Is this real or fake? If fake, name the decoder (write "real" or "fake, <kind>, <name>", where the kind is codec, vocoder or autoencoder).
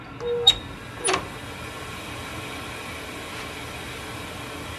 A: real